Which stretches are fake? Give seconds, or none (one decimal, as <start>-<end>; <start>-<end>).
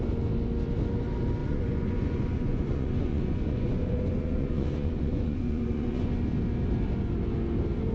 1.4-6.1